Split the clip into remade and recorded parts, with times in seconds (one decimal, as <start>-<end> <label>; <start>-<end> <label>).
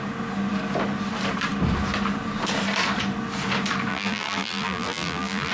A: 0.0-3.9 recorded; 3.9-5.5 remade